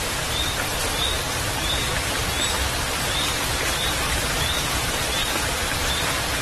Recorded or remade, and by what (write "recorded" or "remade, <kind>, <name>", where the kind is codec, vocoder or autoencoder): remade, vocoder, BigVGAN v2